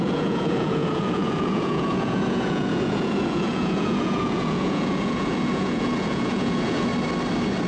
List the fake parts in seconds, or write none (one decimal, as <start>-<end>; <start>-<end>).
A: 0.0-6.9